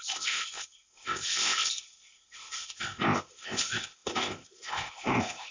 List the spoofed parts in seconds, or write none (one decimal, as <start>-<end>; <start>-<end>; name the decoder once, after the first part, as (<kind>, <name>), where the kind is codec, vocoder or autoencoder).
0.0-5.5 (codec, ZipCodec)